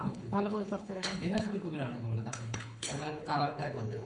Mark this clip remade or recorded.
remade